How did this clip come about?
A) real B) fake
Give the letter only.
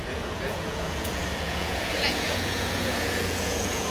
B